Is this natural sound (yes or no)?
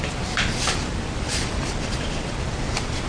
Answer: no